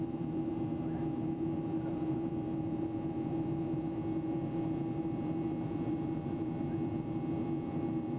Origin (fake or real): fake